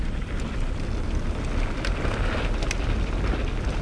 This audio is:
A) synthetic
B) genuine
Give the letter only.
B